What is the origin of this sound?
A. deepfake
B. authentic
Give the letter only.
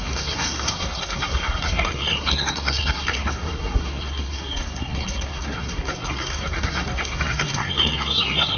A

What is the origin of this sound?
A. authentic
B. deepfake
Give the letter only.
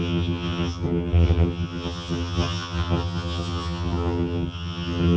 B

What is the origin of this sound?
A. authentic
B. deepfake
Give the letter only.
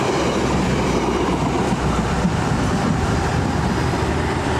B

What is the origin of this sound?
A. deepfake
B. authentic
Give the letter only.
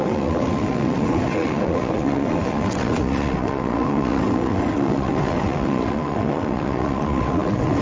A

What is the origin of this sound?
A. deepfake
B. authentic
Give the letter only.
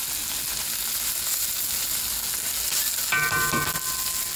B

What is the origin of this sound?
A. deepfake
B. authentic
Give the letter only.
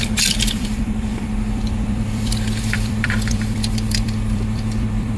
A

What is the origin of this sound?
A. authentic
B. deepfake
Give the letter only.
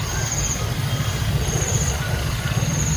A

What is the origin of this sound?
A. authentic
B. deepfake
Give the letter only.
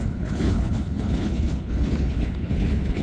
B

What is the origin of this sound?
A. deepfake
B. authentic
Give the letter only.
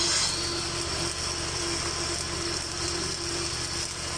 B